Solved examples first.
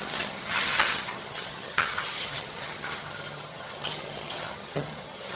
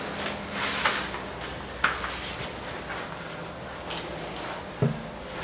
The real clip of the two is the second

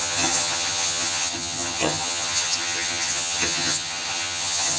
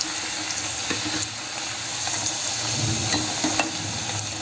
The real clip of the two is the second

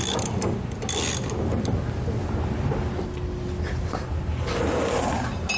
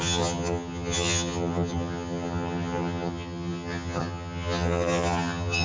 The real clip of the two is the first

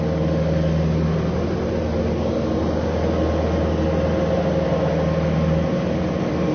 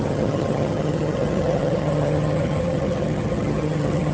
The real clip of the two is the first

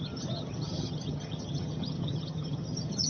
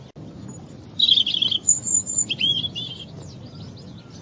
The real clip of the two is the second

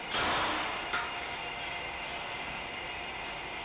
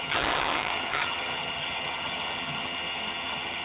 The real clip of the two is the first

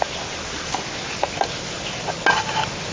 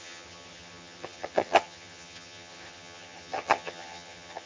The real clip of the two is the first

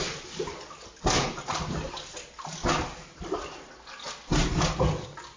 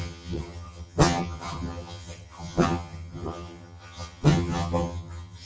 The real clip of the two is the first